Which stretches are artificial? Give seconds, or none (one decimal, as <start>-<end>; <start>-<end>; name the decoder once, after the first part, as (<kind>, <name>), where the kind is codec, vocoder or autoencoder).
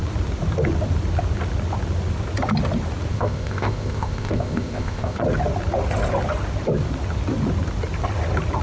3.1-5.2 (codec, ZipCodec)